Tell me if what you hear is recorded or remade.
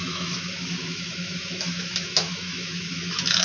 remade